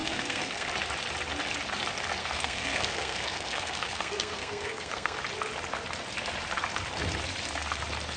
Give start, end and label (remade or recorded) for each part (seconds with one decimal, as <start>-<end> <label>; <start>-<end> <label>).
0.0-0.7 remade; 0.7-2.2 recorded; 2.2-5.2 remade; 5.2-8.2 recorded